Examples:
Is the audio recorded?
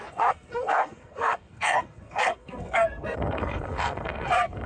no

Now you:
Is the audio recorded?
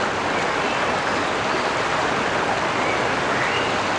yes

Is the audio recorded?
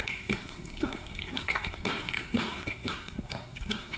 no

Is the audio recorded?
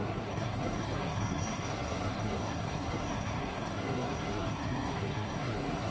no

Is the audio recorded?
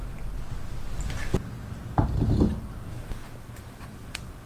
yes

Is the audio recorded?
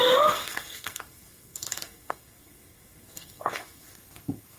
no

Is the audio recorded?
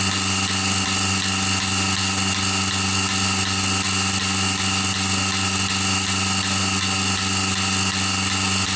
yes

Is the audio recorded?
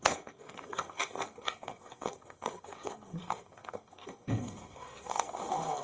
no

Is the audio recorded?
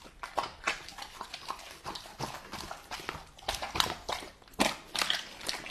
yes